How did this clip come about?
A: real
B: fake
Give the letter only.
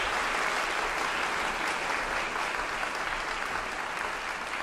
A